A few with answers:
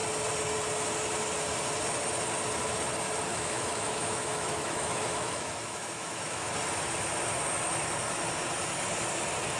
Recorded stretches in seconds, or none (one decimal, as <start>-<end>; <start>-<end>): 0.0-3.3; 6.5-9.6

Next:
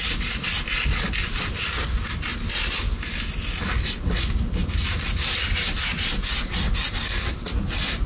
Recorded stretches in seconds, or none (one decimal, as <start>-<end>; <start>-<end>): 0.0-8.1

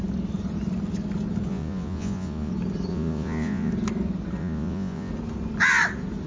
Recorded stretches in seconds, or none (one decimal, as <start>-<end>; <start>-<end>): 0.0-1.5; 2.5-2.9; 3.7-4.4; 5.1-6.3

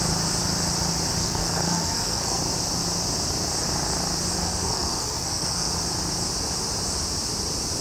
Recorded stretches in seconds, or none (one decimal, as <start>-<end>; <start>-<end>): 0.0-1.2; 2.4-4.4; 5.7-7.8